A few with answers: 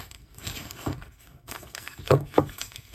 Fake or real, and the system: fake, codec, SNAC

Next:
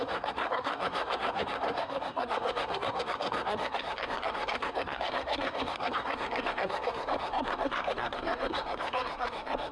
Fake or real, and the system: fake, codec, SNAC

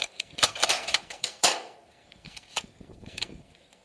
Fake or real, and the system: fake, codec, SNAC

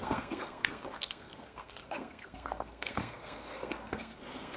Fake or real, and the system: fake, codec, SNAC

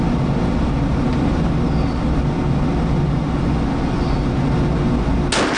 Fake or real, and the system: real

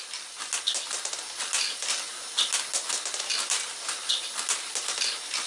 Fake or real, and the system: real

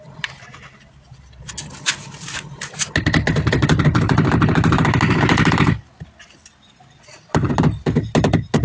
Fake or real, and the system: real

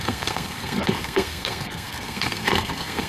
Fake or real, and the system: fake, codec, SNAC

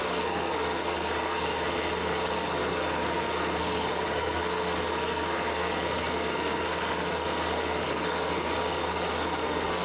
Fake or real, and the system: fake, codec, SNAC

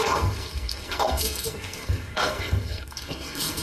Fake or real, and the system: fake, codec, SNAC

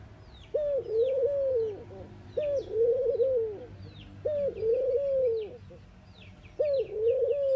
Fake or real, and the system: real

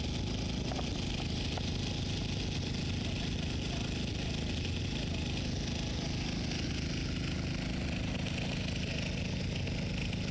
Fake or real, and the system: real